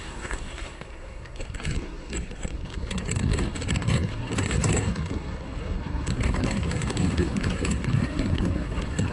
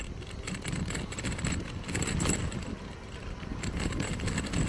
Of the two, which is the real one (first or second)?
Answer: second